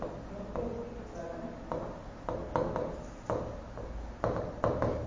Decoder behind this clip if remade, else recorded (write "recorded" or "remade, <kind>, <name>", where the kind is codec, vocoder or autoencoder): recorded